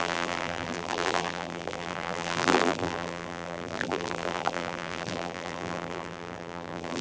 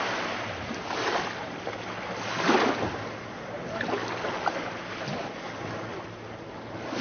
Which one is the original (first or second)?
second